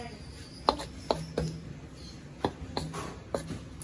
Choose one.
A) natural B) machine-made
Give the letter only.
A